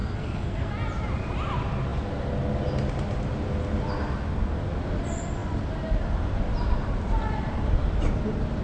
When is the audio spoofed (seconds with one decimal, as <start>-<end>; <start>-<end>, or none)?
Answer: 0.0-0.7